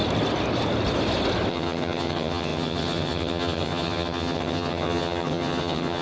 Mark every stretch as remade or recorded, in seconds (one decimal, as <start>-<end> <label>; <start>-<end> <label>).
0.0-1.5 recorded; 1.5-6.0 remade